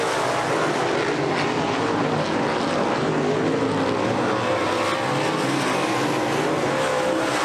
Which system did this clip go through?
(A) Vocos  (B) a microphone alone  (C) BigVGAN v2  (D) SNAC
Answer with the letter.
B